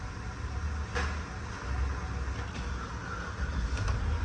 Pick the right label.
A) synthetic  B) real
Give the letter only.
B